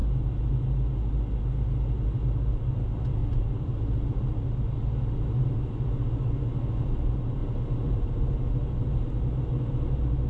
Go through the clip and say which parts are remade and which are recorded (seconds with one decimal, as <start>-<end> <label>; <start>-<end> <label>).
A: 0.0-3.2 recorded; 3.2-4.3 remade; 4.3-7.4 recorded; 7.4-9.2 remade; 9.2-10.3 recorded